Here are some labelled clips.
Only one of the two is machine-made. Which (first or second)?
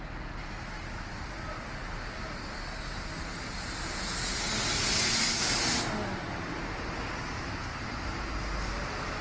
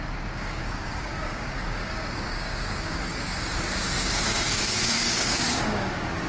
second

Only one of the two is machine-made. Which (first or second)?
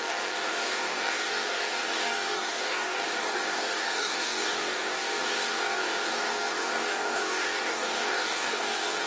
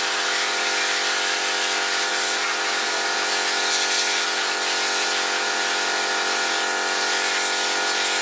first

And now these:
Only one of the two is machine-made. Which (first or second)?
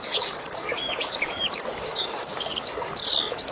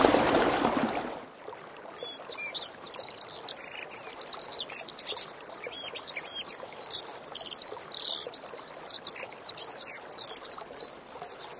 first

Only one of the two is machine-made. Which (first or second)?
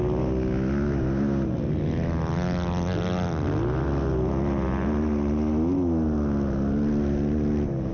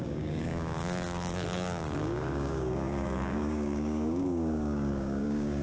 second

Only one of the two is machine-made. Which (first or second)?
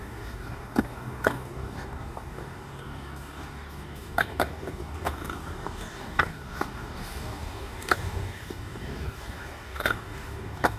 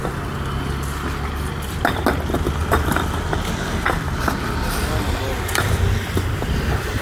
first